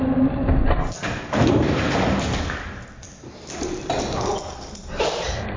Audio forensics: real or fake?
real